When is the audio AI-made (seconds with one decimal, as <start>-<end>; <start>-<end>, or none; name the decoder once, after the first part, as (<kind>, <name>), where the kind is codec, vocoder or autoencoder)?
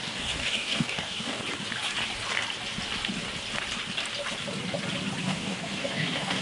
0.0-1.4 (codec, DAC); 5.2-6.4